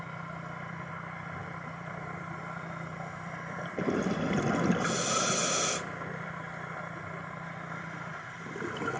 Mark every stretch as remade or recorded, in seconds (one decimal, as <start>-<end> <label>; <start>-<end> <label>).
0.0-1.4 recorded; 1.4-2.4 remade; 2.4-8.1 recorded; 8.1-8.6 remade; 8.6-9.0 recorded